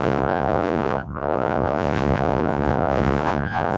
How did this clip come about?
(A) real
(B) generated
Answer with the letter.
B